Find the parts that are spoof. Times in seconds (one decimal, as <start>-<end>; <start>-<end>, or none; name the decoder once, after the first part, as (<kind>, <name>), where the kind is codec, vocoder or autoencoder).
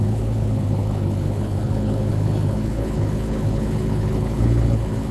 0.0-5.1 (codec, HILCodec)